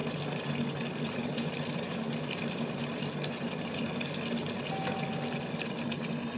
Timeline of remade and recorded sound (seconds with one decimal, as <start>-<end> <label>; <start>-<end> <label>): 0.0-6.4 recorded